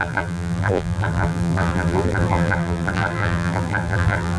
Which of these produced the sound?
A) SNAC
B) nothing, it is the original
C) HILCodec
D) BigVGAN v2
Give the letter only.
D